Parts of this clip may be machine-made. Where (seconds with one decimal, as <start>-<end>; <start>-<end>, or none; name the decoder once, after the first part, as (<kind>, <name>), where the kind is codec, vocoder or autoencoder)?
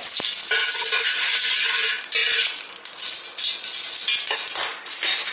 none